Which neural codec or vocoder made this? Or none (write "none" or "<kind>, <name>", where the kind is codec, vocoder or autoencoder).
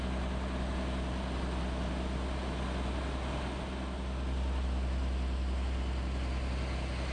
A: none